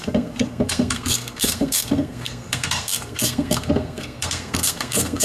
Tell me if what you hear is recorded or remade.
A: remade